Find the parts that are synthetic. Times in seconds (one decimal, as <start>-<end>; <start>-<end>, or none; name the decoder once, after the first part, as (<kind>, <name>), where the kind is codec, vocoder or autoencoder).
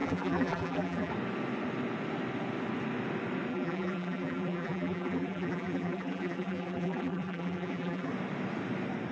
0.0-1.1 (vocoder, BigVGAN v2); 3.5-8.1